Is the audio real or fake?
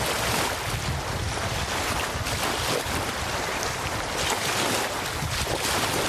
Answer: real